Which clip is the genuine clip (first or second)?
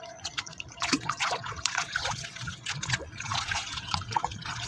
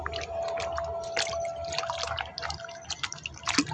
second